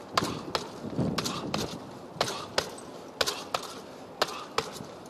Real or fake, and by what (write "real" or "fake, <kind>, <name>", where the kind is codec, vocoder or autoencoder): real